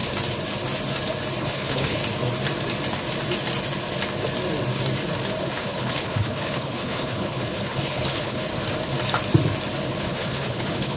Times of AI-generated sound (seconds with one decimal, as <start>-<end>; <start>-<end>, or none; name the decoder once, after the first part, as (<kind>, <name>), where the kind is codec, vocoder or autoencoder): 1.4-2.0 (codec, HILCodec); 5.4-8.5; 10.0-11.0